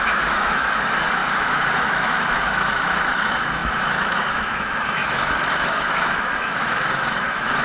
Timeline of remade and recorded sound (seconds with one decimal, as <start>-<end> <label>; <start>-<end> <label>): 0.0-7.6 remade

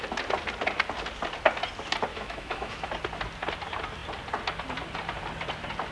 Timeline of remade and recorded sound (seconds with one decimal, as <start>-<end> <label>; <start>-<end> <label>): 0.0-2.1 recorded; 2.1-2.9 remade; 2.9-5.9 recorded

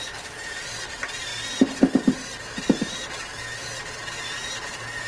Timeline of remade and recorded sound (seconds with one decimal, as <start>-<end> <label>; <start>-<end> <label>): 0.0-5.1 recorded

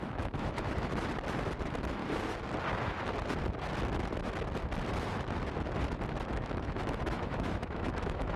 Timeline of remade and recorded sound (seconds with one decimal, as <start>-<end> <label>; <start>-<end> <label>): 0.0-0.9 remade; 0.9-1.6 recorded; 1.6-2.0 remade; 2.0-6.3 recorded; 6.3-8.4 remade